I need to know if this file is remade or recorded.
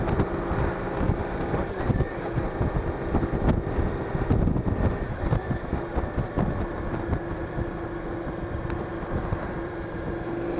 recorded